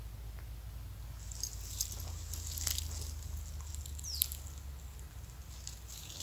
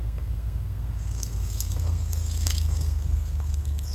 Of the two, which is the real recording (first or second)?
first